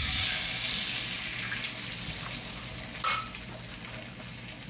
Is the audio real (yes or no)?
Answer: yes